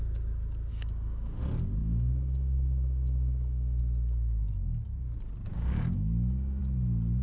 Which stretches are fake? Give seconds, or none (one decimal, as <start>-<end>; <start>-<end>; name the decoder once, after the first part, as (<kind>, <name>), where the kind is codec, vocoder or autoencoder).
0.7-1.4 (codec, DAC); 1.8-3.8; 5.5-6.6